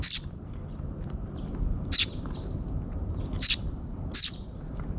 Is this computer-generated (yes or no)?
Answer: no